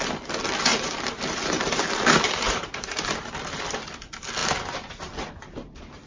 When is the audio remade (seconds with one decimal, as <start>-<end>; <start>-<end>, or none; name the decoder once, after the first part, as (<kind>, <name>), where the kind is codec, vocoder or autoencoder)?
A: 0.7-3.3 (vocoder, BigVGAN v2)